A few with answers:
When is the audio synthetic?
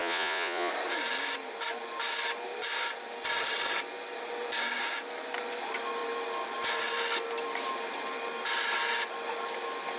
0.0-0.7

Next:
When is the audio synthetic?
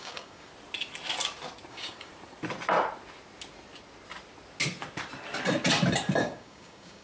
0.0-0.5; 1.7-2.1; 6.2-7.0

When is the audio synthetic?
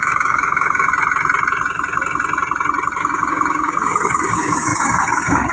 0.0-0.9; 3.0-5.5